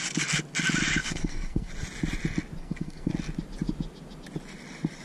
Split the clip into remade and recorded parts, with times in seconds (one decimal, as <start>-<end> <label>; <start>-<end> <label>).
0.0-1.0 recorded; 1.0-1.7 remade; 1.7-2.6 recorded; 2.6-3.1 remade; 3.1-5.0 recorded